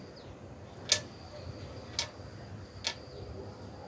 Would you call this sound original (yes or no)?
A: yes